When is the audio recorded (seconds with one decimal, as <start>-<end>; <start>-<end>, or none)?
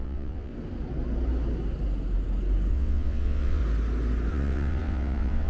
0.5-2.7; 3.6-4.3